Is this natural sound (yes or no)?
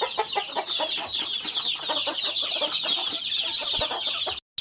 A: yes